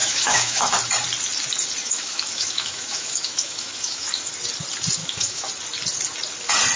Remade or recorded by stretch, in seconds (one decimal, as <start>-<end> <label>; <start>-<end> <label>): 0.0-0.7 remade; 0.7-1.8 recorded; 1.8-4.3 remade; 4.3-5.0 recorded; 5.0-5.5 remade; 5.5-6.8 recorded

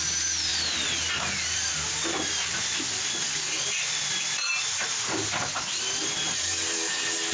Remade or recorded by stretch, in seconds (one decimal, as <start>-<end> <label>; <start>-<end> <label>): 0.0-7.3 recorded

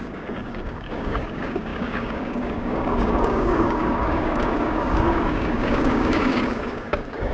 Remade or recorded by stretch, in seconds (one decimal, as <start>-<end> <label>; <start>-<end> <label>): 0.0-7.3 remade